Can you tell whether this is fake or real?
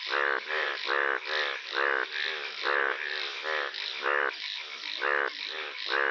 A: real